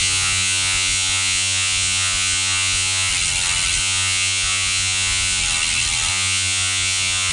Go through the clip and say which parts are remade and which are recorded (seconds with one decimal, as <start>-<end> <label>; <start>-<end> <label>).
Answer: 0.0-3.1 remade; 3.1-3.8 recorded; 3.8-5.4 remade; 5.4-6.1 recorded; 6.1-7.3 remade